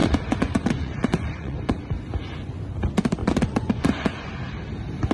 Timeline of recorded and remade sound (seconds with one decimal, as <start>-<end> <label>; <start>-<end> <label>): 0.0-2.0 remade; 2.0-3.2 recorded; 3.2-4.3 remade; 4.3-5.1 recorded